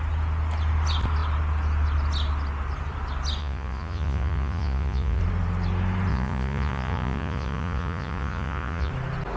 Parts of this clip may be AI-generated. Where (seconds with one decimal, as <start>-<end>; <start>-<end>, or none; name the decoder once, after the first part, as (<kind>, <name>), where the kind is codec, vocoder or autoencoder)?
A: 3.4-5.2 (vocoder, Vocos); 6.1-8.9